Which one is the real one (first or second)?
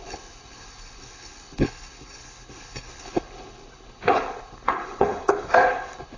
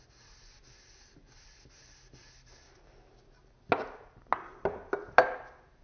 second